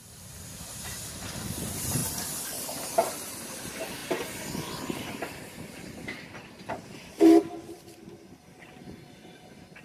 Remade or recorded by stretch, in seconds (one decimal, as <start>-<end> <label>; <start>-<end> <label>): 0.0-2.0 remade; 2.0-2.8 recorded; 2.8-9.8 remade